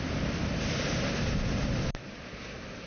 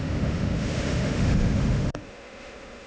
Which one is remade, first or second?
second